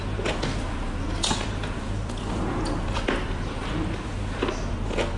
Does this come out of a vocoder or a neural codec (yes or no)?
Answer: no